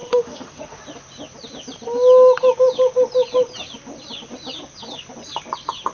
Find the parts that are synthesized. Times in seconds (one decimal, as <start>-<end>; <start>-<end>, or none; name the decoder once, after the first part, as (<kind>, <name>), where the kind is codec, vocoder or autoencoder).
0.0-0.8 (autoencoder, DAC-VAE)